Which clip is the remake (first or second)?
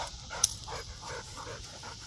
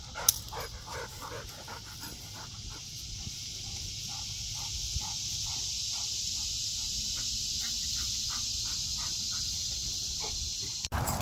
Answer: first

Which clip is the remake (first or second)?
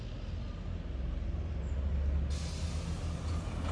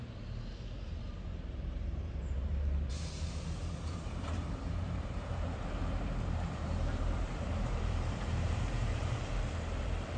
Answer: second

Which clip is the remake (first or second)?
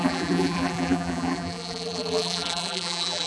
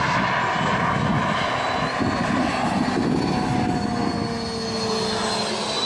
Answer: first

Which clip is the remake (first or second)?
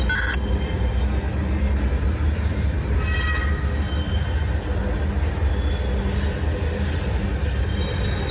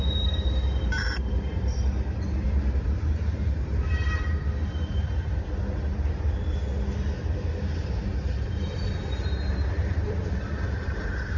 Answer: second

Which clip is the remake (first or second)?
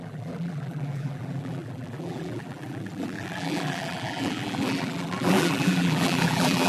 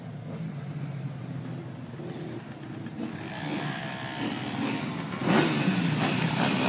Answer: first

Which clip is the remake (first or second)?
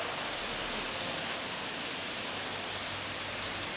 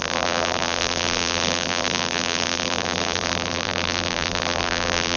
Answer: second